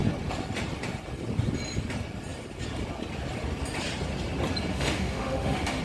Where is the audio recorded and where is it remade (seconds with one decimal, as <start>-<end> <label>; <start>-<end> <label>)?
0.0-4.7 recorded; 4.7-5.8 remade